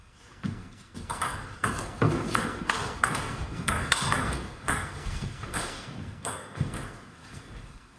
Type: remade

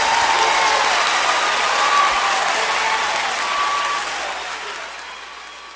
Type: recorded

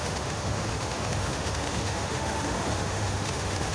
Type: remade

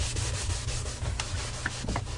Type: recorded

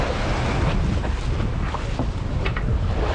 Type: remade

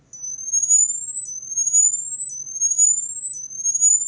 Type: recorded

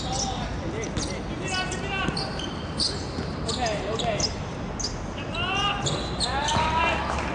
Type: recorded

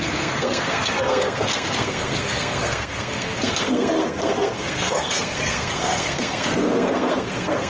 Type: remade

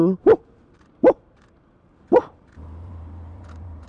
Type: remade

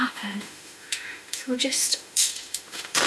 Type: remade